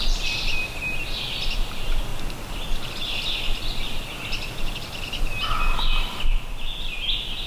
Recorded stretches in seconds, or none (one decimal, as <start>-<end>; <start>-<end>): 0.0-7.5